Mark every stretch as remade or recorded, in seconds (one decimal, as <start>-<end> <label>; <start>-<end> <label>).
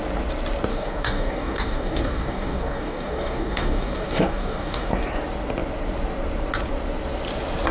0.0-0.7 recorded; 0.7-4.9 remade; 4.9-7.7 recorded